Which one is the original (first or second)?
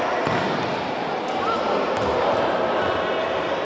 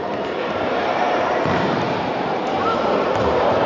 first